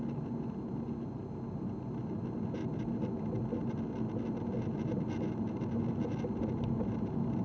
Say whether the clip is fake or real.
real